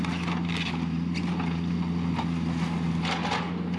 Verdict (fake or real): real